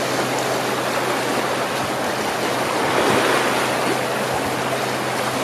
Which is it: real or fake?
real